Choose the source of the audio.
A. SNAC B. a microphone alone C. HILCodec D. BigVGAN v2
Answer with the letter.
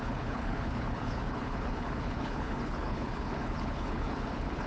C